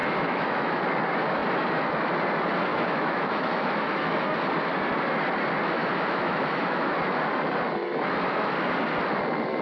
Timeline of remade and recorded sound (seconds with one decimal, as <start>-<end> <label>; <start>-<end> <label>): 0.0-0.8 remade; 0.8-2.7 recorded; 2.7-4.4 remade; 4.4-5.9 recorded; 5.9-6.9 remade; 6.9-9.6 recorded